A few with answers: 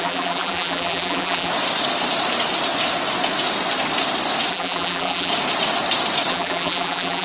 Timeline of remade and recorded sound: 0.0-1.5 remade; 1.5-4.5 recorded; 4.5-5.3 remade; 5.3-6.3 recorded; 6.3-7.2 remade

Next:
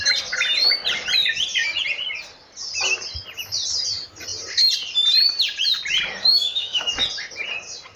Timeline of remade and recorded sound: 0.0-6.2 recorded; 6.2-6.9 remade; 6.9-8.0 recorded

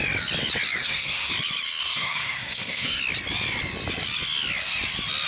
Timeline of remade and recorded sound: 0.0-0.8 recorded; 0.8-1.3 remade; 1.3-1.8 recorded; 1.8-3.0 remade; 3.0-5.3 recorded

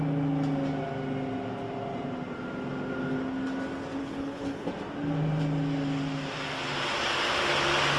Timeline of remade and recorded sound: 0.0-4.0 recorded; 4.0-4.7 remade; 4.7-8.0 recorded

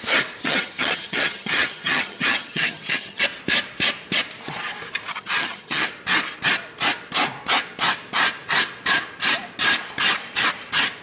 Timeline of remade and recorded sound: 0.0-0.4 recorded; 0.4-3.2 remade; 3.2-5.1 recorded; 5.1-5.9 remade; 5.9-11.0 recorded

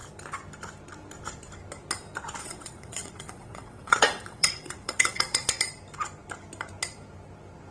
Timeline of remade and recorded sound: 0.0-2.4 recorded; 2.4-5.6 remade; 5.6-7.7 recorded